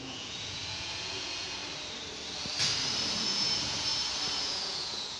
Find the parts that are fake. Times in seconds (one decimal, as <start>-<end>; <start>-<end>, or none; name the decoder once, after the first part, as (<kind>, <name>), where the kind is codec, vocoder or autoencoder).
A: 0.0-1.6 (vocoder, Vocos); 3.1-3.9; 4.4-5.2

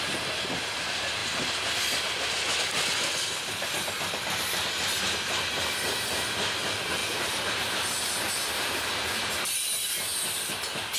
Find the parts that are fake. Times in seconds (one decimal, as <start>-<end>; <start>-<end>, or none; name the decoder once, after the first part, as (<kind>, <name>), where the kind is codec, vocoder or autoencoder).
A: none

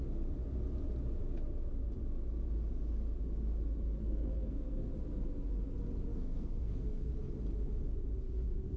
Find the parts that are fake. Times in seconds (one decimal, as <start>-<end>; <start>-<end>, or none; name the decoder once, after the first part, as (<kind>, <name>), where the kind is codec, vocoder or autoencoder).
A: 4.0-4.9 (codec, SNAC); 6.1-7.1